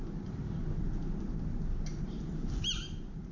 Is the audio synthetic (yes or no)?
no